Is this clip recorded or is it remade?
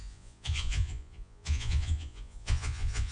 remade